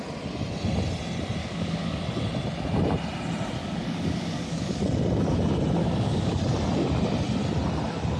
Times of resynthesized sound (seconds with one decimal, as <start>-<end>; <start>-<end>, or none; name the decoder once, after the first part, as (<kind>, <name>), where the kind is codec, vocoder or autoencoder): 1.4-2.0 (codec, DAC); 3.6-4.8; 5.8-6.4